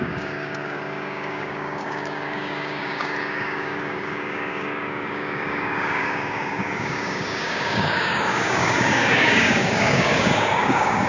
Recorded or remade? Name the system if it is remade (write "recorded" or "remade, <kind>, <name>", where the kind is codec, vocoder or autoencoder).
remade, codec, DAC